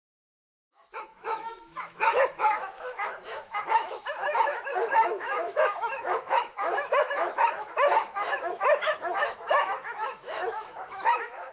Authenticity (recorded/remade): remade